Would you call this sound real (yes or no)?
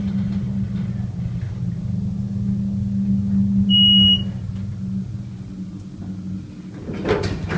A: yes